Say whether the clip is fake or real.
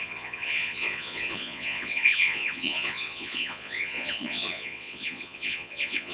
fake